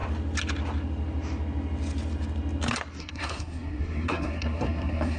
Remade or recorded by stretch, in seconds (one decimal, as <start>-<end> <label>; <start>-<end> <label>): 0.0-3.0 recorded; 3.0-5.2 remade